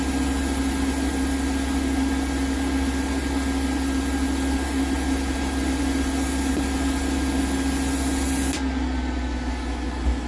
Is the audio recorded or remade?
recorded